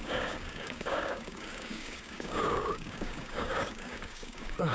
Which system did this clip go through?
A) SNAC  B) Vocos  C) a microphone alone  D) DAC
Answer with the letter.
D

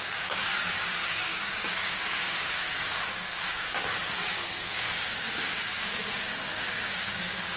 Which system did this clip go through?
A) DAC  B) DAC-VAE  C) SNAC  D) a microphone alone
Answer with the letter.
A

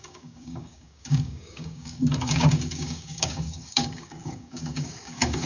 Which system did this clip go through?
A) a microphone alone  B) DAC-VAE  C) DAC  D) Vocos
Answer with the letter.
C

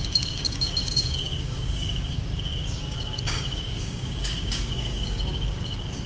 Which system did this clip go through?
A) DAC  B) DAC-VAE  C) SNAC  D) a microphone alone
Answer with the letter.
A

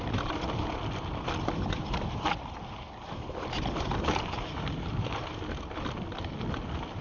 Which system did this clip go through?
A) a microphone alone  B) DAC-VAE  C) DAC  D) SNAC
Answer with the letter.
A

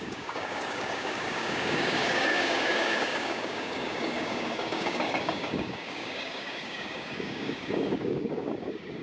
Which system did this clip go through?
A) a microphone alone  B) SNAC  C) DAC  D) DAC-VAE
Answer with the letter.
C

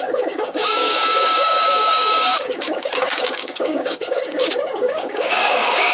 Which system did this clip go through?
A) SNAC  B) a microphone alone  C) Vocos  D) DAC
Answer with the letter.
D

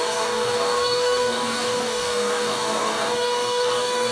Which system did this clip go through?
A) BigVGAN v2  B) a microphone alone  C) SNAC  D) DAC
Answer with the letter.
D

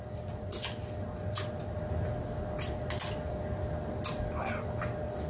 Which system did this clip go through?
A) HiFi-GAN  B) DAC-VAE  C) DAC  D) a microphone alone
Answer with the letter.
D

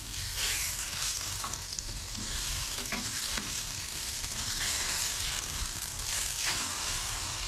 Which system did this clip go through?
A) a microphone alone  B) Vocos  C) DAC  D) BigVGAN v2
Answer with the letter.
C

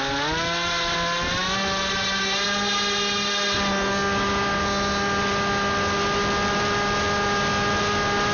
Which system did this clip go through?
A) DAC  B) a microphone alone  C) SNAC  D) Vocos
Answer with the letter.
B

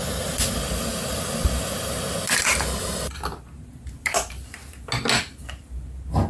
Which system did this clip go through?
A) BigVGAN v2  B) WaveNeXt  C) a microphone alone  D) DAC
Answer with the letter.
C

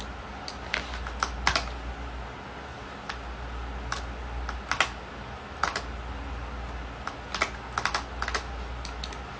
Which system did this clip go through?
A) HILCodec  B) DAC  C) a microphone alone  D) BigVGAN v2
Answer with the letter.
C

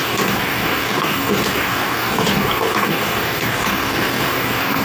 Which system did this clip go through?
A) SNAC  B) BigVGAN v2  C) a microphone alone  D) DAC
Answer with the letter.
D